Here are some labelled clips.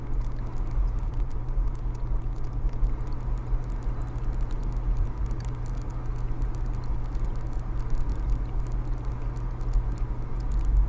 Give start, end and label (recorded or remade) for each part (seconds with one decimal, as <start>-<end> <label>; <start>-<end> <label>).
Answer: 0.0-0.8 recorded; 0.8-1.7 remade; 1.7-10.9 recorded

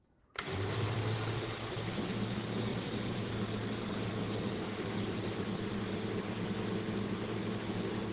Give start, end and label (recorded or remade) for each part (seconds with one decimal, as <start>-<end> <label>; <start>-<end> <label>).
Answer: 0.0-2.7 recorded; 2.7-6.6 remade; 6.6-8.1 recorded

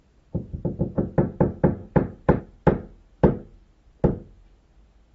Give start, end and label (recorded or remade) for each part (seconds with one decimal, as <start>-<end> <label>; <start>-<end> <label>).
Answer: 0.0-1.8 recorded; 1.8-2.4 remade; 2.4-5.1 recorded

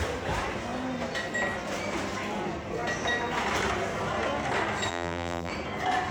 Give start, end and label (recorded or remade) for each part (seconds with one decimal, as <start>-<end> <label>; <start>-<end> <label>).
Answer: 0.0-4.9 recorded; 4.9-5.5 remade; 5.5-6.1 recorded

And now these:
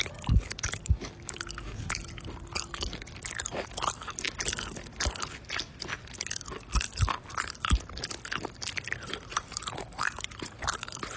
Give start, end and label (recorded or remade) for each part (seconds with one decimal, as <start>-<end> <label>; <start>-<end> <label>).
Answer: 0.0-9.3 recorded; 9.3-10.0 remade; 10.0-11.2 recorded